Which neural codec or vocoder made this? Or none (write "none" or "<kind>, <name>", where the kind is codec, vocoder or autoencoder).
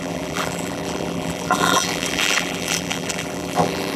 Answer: vocoder, BigVGAN v2